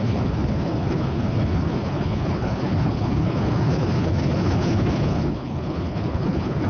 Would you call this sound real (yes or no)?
no